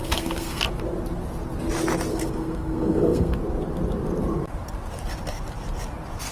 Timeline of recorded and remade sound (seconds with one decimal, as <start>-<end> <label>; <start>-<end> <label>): 0.0-0.6 remade; 0.6-2.1 recorded; 2.1-3.4 remade; 3.4-6.3 recorded